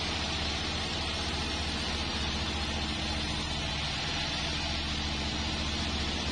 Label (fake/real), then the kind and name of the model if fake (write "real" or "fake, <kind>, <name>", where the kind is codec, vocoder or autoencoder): fake, vocoder, BigVGAN v2